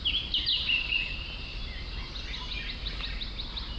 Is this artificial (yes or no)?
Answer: no